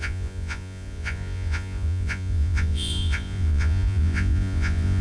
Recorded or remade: remade